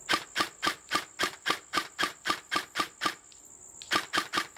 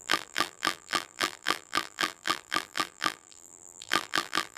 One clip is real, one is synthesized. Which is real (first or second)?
first